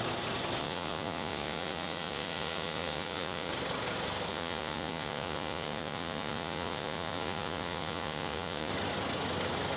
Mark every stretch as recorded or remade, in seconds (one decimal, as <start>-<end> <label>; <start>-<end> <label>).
0.0-0.6 recorded; 0.6-3.5 remade; 3.5-4.3 recorded; 4.3-8.7 remade; 8.7-9.8 recorded

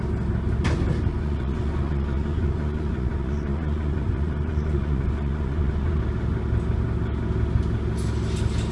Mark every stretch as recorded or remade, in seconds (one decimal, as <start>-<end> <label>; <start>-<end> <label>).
0.0-1.1 recorded; 1.1-6.0 remade; 6.0-8.7 recorded

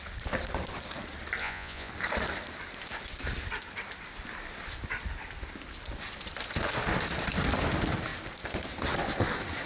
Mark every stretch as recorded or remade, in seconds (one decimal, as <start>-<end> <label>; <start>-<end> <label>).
0.0-1.4 recorded; 1.4-1.9 remade; 1.9-9.7 recorded

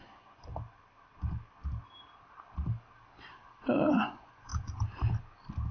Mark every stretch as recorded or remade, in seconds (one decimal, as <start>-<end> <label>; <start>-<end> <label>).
0.0-0.5 remade; 0.5-3.9 recorded; 3.9-4.5 remade; 4.5-5.7 recorded

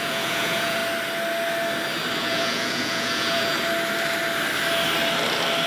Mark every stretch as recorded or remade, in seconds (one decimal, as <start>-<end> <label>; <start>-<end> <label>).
0.0-0.8 remade; 0.8-2.2 recorded; 2.2-3.5 remade; 3.5-5.7 recorded